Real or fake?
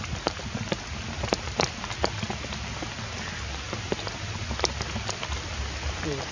real